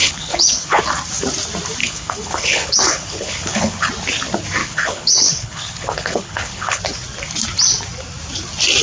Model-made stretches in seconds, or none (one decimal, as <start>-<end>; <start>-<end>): 0.0-0.8; 1.8-3.9; 4.6-6.8